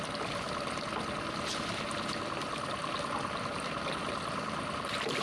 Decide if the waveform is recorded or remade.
recorded